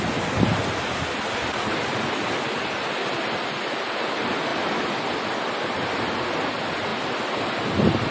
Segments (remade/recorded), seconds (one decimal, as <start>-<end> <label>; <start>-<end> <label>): 0.0-8.1 recorded